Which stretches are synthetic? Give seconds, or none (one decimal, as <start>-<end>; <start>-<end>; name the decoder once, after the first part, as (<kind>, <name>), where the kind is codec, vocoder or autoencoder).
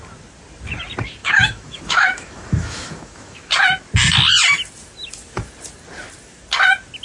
1.2-3.5 (autoencoder, DAC-VAE)